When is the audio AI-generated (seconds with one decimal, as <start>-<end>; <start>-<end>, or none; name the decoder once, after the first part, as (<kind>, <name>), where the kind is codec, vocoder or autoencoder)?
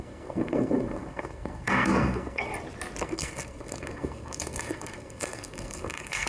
0.0-2.5 (codec, SNAC); 3.0-6.3